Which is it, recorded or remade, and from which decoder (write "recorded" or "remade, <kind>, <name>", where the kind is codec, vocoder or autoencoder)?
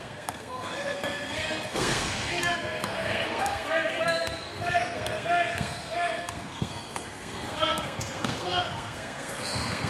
remade, codec, SNAC